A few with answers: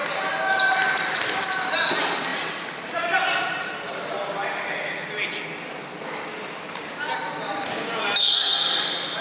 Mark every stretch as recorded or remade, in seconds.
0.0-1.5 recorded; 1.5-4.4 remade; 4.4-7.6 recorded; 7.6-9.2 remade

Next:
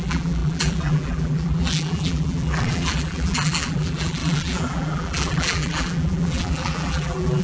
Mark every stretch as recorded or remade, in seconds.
0.0-7.4 remade

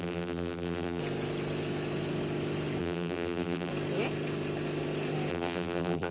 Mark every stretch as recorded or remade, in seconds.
0.0-1.0 remade; 1.0-2.8 recorded; 2.8-3.7 remade; 3.7-5.3 recorded; 5.3-6.1 remade

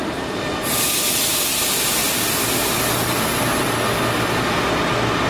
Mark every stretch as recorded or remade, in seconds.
0.0-2.0 remade; 2.0-5.3 recorded

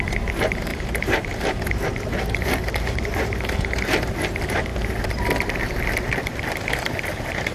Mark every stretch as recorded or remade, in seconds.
0.0-7.5 remade

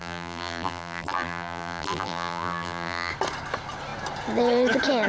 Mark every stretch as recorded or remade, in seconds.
0.0-3.1 remade; 3.1-5.1 recorded

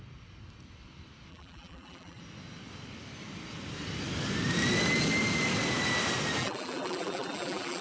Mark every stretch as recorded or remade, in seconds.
0.0-1.3 recorded; 1.3-2.2 remade; 2.2-6.4 recorded; 6.4-7.8 remade

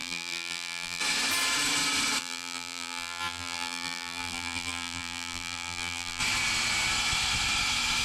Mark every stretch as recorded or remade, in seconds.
0.0-1.0 remade; 1.0-2.2 recorded; 2.2-6.2 remade; 6.2-8.0 recorded